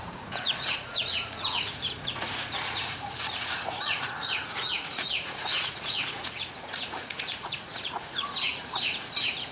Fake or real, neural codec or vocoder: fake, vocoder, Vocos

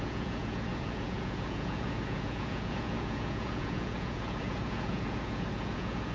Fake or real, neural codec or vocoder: fake, vocoder, Vocos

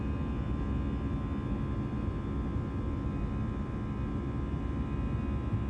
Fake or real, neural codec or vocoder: real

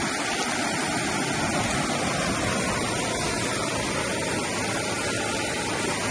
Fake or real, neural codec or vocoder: real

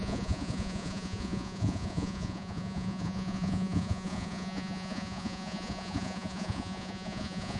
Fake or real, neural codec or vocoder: fake, vocoder, Vocos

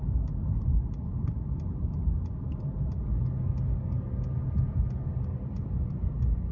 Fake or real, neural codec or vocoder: real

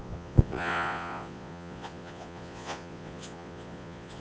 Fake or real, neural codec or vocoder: fake, vocoder, Vocos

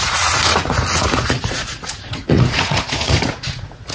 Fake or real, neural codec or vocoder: fake, vocoder, Vocos